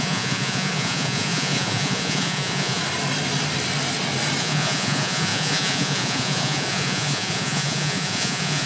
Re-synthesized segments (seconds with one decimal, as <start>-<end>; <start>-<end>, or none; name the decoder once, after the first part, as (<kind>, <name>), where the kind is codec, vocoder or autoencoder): 0.0-2.8 (vocoder, Vocos); 4.4-8.7